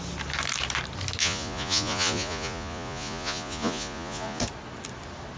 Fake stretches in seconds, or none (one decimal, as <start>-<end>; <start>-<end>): 1.2-4.4